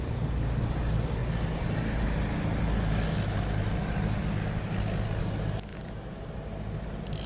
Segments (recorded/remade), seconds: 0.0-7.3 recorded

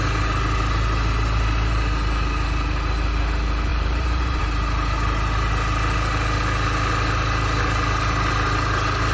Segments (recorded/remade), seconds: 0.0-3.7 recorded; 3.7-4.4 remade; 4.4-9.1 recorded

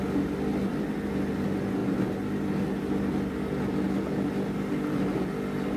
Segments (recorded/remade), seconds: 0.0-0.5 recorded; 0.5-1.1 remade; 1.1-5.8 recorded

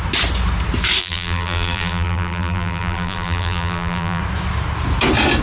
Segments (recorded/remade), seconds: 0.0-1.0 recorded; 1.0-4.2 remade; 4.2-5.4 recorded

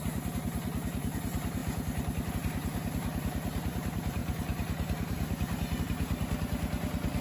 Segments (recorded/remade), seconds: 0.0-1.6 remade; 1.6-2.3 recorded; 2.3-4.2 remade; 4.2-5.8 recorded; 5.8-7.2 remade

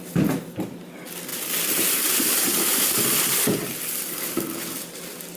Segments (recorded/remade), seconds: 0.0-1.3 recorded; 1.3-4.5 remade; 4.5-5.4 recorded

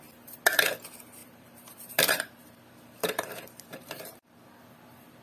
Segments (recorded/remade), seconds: 0.0-1.2 recorded; 1.2-4.3 remade; 4.3-5.2 recorded